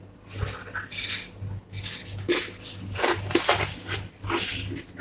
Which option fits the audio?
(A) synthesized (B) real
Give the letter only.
B